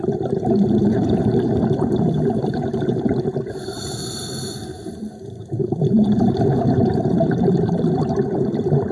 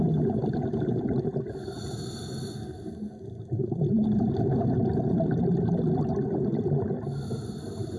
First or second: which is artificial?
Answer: first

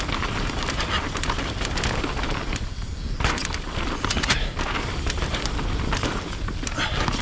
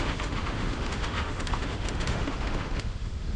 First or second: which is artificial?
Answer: second